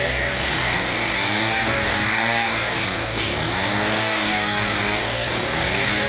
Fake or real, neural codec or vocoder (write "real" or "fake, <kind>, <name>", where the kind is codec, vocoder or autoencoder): fake, codec, DAC